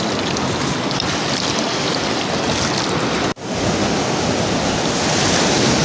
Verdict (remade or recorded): recorded